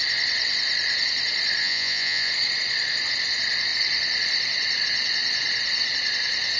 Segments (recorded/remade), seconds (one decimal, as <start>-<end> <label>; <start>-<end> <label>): 0.0-1.6 recorded; 1.6-2.3 remade; 2.3-6.6 recorded

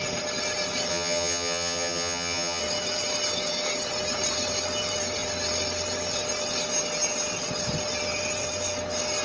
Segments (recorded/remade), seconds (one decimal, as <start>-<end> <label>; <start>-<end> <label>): 0.0-0.9 recorded; 0.9-2.6 remade; 2.6-9.2 recorded

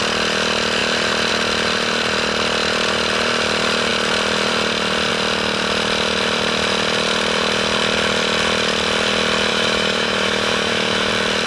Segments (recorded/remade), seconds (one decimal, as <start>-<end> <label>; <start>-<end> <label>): 0.0-9.5 recorded; 9.5-11.1 remade; 11.1-11.5 recorded

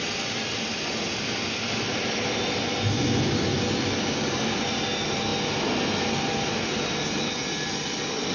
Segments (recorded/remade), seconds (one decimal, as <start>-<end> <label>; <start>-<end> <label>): 0.0-8.3 recorded

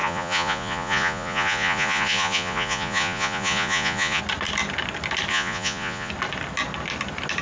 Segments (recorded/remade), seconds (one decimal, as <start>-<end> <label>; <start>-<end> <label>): 0.0-4.2 remade; 4.2-5.3 recorded; 5.3-6.1 remade; 6.1-7.4 recorded

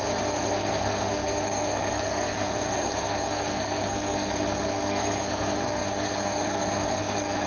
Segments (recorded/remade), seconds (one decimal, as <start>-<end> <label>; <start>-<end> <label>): 0.0-7.5 remade

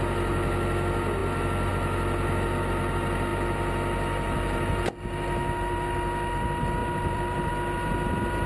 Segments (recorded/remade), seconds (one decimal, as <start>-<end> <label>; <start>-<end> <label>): 0.0-1.2 recorded; 1.2-1.7 remade; 1.7-6.8 recorded; 6.8-7.5 remade; 7.5-8.5 recorded